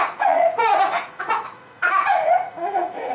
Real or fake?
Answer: fake